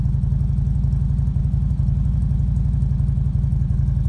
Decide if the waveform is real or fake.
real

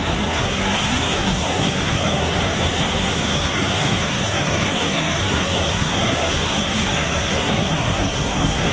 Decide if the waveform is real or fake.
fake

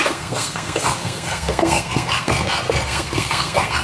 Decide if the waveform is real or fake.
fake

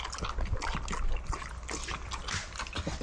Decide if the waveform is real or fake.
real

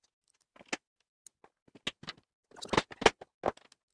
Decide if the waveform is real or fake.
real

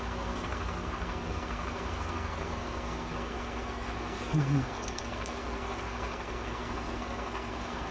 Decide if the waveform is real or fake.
fake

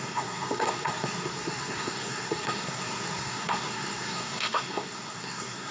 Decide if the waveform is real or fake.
fake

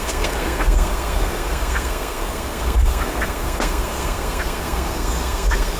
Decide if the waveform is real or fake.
fake